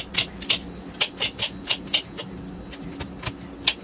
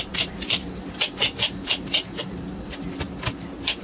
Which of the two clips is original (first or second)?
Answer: first